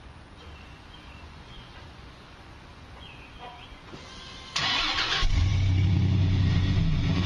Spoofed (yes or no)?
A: yes